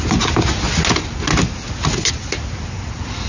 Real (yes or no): yes